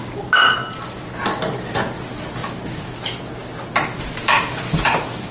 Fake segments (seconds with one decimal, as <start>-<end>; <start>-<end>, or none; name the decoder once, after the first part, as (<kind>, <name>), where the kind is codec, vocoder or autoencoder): none

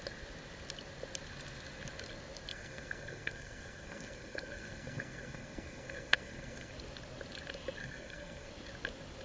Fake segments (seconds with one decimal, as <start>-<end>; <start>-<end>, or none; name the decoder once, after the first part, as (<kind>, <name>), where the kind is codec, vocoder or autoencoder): 2.5-6.7 (codec, SNAC); 7.8-8.5

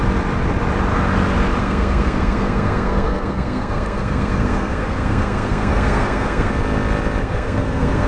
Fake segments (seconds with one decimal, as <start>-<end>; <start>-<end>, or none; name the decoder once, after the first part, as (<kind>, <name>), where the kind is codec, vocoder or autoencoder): 1.6-6.5 (codec, SNAC); 7.2-8.1

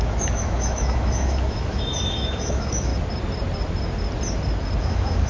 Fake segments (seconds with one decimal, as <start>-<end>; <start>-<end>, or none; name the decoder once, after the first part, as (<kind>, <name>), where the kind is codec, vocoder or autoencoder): 0.0-2.9 (autoencoder, DAC-VAE); 4.8-5.3

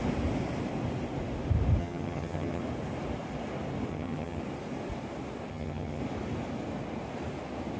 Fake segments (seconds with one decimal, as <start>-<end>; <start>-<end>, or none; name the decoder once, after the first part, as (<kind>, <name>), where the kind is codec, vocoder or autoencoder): 1.8-2.6 (vocoder, HiFi-GAN); 3.9-4.4; 5.5-6.0

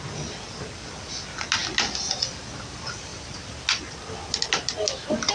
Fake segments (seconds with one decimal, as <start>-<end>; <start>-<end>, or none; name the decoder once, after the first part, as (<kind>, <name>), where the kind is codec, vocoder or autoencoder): none

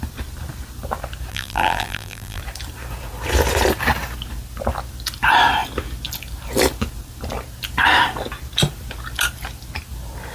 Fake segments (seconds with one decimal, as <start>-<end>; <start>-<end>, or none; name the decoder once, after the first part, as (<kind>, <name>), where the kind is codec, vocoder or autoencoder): 1.3-2.4 (vocoder, BigVGAN v2)